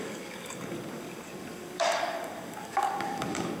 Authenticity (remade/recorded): remade